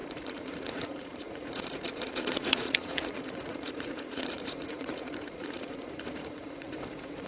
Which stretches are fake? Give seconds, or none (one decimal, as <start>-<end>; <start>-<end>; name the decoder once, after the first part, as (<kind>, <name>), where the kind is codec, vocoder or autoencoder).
0.0-7.3 (vocoder, Vocos)